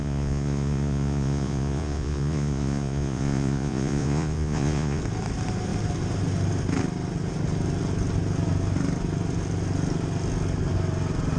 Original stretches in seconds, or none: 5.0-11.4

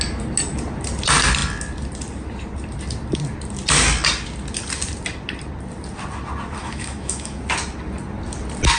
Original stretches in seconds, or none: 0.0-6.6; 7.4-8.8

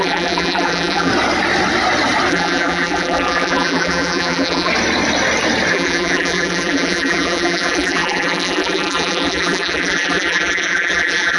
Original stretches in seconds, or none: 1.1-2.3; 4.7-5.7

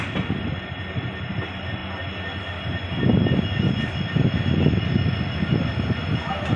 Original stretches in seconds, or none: 0.0-6.6